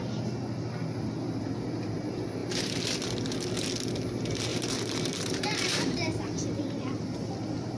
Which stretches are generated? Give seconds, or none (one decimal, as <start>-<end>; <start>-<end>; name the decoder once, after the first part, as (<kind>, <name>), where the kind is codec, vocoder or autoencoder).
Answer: 4.5-6.4 (vocoder, BigVGAN v2)